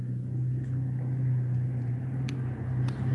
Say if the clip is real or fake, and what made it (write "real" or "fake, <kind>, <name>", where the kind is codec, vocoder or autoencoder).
real